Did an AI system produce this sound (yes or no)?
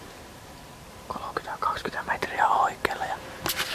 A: no